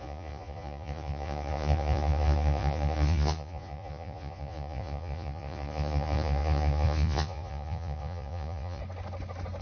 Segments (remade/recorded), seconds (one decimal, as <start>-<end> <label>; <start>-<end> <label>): 0.0-8.8 remade; 8.8-9.6 recorded